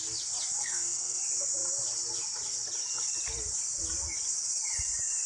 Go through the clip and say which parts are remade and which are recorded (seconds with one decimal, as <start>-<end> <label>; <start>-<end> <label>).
0.0-0.6 recorded; 0.6-1.2 remade; 1.2-5.3 recorded